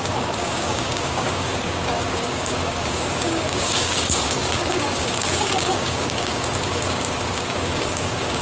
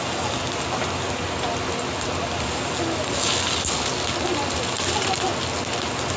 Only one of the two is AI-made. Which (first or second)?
first